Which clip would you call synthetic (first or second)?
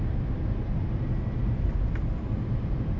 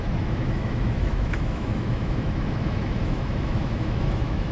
second